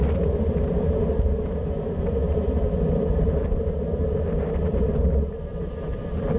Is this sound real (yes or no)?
no